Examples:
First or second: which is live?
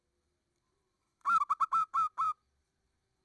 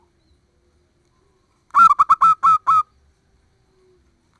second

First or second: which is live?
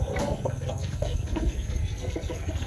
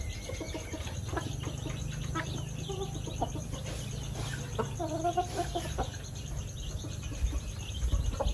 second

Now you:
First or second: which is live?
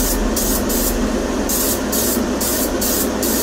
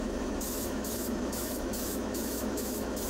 first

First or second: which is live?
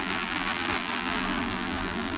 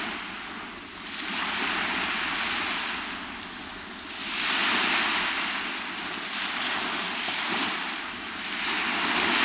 second